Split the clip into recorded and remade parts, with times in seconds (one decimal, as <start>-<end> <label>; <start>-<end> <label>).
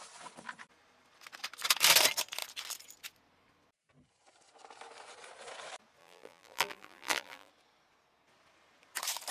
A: 0.0-6.0 recorded; 6.0-7.5 remade; 7.5-9.3 recorded